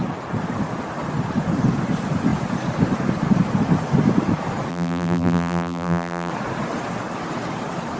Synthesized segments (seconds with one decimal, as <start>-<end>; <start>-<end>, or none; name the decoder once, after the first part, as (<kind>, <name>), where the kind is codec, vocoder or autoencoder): 4.7-6.3 (vocoder, BigVGAN v2)